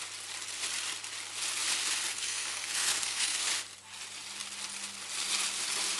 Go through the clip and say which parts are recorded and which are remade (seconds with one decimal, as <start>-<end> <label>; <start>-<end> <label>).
0.0-2.1 recorded; 2.1-3.5 remade; 3.5-6.0 recorded